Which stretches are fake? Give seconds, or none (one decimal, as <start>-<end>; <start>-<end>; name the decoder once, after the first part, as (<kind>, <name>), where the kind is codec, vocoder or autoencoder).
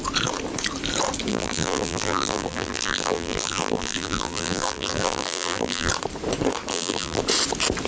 1.3-5.9 (vocoder, BigVGAN v2); 6.7-7.2